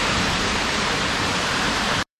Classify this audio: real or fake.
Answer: fake